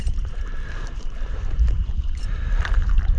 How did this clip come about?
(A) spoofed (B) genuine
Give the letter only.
A